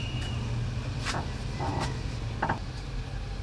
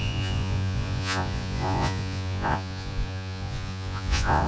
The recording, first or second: first